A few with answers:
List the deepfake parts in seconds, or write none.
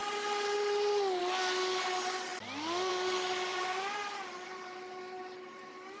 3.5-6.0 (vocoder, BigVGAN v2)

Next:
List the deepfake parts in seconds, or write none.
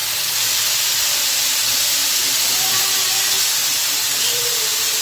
2.0-3.0 (vocoder, BigVGAN v2); 3.6-5.0